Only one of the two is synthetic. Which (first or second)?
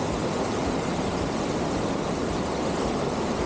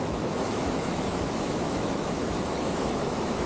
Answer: second